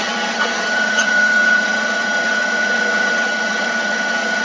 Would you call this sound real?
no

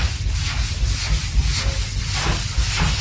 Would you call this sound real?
yes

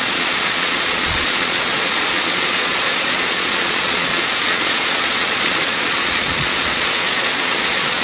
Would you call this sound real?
no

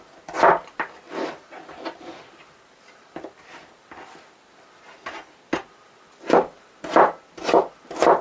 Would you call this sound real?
yes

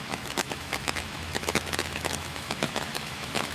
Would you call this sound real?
no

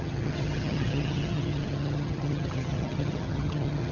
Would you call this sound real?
no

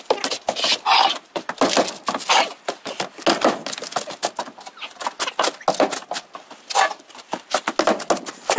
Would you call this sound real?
yes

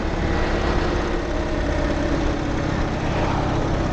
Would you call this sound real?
yes